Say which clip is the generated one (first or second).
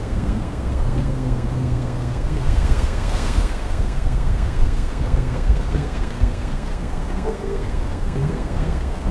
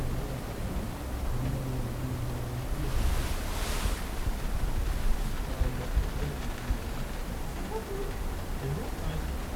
first